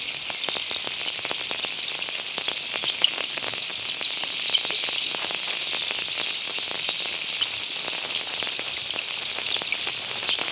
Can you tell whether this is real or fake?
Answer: real